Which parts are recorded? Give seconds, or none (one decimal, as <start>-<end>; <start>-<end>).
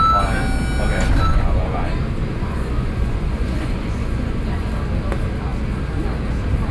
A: 0.0-1.3; 1.8-2.3; 4.7-6.7